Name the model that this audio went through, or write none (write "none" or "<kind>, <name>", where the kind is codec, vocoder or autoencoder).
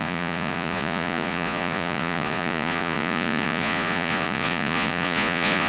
vocoder, Vocos